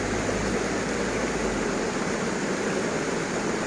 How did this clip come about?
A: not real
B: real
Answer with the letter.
B